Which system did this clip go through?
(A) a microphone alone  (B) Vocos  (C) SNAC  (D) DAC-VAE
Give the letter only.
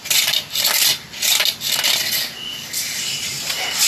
A